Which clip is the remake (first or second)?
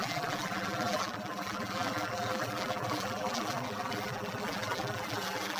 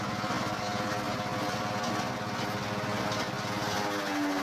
first